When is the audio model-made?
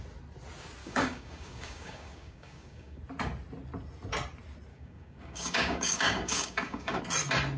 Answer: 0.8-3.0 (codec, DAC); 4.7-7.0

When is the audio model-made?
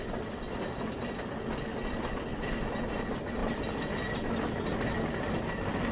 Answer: none